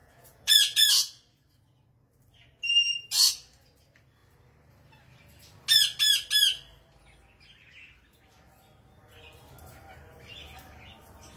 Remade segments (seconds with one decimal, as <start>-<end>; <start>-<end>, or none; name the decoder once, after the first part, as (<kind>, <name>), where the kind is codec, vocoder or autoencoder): 0.0-0.9 (vocoder, Vocos)

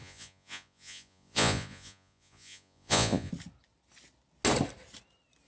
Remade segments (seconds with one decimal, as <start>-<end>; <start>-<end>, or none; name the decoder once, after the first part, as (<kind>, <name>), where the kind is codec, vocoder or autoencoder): 0.0-3.3 (vocoder, Vocos)

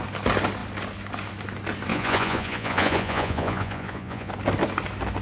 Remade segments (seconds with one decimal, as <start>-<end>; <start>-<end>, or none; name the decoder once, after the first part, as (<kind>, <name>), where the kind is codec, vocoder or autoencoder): 1.9-4.3 (vocoder, Vocos)

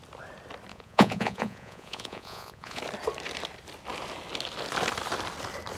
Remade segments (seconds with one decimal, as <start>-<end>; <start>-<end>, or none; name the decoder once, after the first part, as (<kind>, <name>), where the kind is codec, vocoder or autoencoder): 0.7-2.8 (vocoder, Vocos)

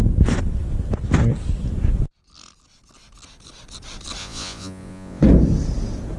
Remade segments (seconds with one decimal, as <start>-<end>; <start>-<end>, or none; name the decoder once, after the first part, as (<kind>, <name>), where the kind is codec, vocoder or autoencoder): 4.2-5.2 (vocoder, Vocos)

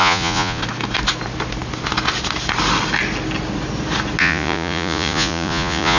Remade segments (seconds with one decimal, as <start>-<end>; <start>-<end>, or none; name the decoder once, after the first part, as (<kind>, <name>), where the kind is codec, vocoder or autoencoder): 0.0-0.6 (vocoder, Vocos); 4.2-6.0

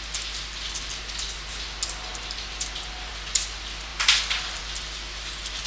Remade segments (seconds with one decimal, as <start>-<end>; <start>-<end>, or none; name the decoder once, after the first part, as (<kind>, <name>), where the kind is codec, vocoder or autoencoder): none